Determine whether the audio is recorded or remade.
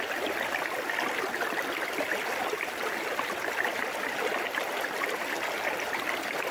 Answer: recorded